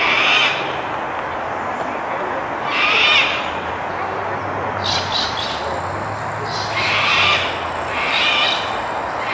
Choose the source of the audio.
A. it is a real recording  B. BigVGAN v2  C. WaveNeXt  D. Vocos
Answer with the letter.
A